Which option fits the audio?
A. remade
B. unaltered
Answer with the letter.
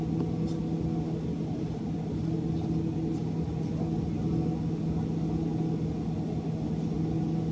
B